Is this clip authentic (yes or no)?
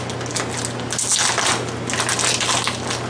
yes